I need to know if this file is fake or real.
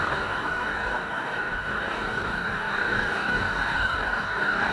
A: fake